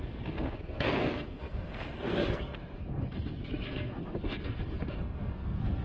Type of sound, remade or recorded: remade